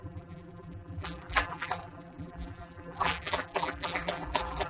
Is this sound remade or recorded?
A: remade